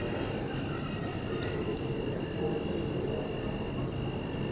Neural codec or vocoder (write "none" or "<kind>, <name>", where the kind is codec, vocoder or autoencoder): none